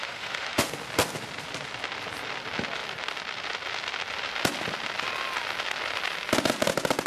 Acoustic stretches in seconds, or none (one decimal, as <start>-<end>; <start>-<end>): 0.7-7.1